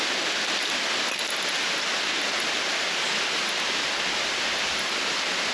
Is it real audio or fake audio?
real